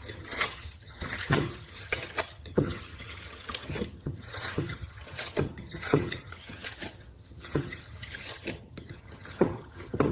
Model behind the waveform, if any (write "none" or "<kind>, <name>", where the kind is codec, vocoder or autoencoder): vocoder, HiFi-GAN